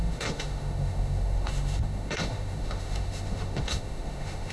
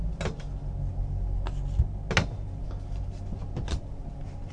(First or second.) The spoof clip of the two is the first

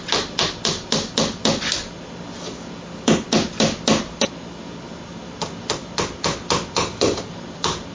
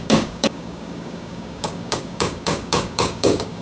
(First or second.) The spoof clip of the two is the second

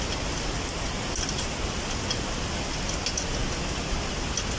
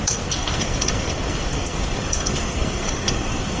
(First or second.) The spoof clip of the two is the second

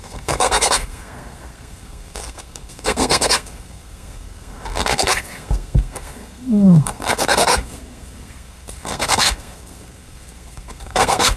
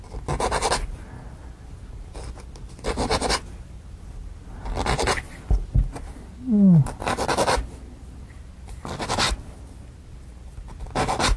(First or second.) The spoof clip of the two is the first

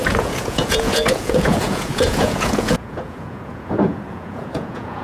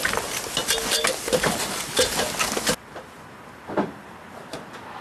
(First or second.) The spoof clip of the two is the first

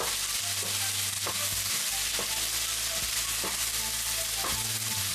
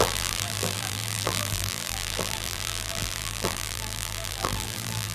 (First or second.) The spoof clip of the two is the second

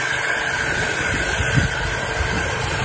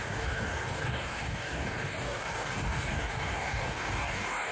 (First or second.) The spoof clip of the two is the second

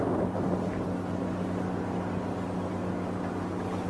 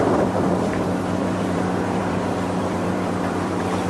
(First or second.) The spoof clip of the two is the second